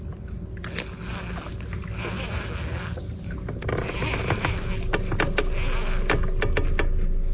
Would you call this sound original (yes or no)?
yes